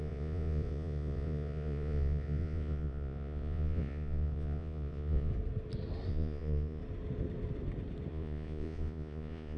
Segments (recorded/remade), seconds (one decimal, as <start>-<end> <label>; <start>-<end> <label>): 0.0-5.3 remade; 5.3-6.1 recorded; 6.1-6.8 remade; 6.8-8.1 recorded; 8.1-9.6 remade